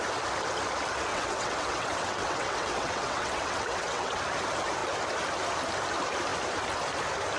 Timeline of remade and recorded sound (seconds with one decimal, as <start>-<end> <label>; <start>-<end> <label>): 0.0-1.1 recorded; 1.1-4.2 remade; 4.2-7.4 recorded